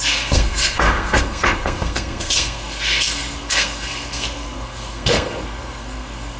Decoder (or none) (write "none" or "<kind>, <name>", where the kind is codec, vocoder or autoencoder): codec, SNAC